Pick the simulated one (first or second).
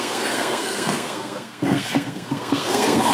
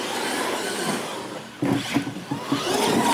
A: first